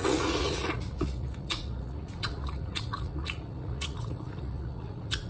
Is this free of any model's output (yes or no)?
no